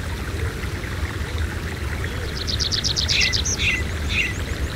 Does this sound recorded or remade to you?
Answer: recorded